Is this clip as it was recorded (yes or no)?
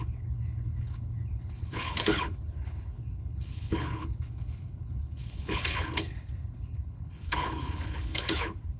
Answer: no